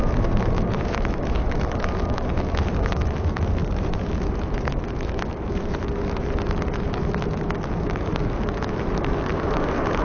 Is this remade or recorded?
remade